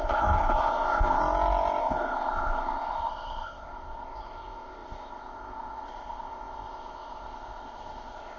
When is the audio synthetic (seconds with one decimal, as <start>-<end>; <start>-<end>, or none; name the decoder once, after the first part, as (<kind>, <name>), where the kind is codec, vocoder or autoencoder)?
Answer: 0.0-1.2 (codec, ZipCodec); 1.8-8.4